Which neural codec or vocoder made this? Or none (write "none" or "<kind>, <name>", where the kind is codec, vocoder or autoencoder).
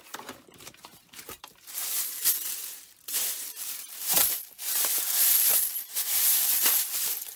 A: vocoder, BigVGAN v2